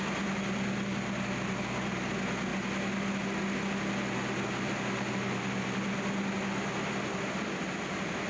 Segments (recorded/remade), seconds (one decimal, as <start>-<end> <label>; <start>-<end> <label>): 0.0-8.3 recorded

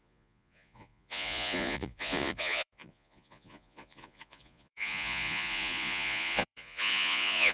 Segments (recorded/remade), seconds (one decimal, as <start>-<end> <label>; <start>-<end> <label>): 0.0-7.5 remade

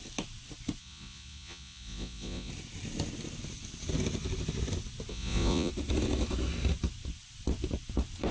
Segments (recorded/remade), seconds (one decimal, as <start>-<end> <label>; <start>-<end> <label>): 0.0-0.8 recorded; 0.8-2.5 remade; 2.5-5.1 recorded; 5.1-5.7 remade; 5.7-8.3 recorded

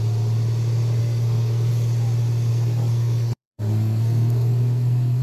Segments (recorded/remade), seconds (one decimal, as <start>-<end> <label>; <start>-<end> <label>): 0.0-1.0 recorded; 1.0-1.7 remade; 1.7-2.5 recorded; 2.5-5.2 remade

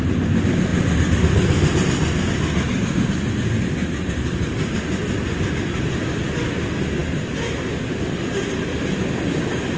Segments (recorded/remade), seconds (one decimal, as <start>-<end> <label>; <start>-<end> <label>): 0.0-9.8 recorded